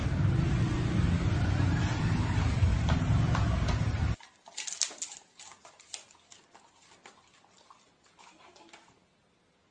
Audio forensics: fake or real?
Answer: real